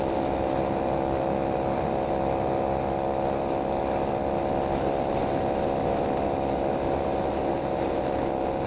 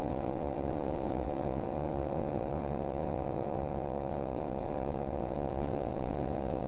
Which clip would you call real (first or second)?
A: first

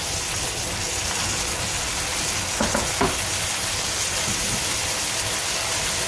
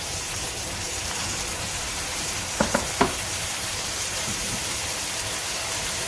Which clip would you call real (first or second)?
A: first